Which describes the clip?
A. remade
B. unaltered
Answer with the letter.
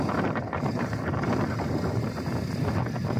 A